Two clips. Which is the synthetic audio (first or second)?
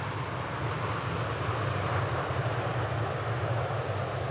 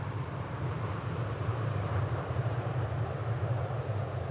second